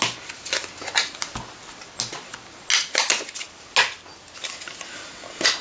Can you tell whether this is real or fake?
real